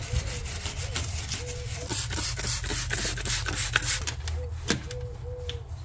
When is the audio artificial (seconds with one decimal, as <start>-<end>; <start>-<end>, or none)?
none